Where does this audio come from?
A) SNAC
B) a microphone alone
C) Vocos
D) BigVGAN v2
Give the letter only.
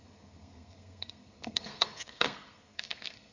A